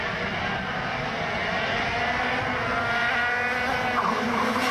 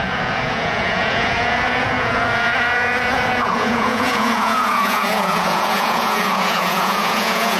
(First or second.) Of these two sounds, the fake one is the second